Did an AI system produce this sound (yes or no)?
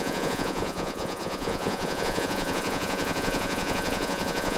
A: yes